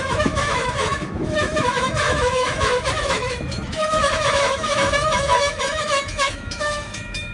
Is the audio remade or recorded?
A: remade